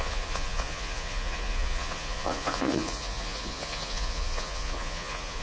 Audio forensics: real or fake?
fake